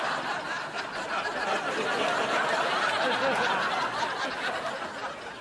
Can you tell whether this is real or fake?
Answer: real